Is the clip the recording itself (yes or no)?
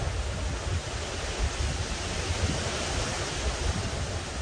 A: yes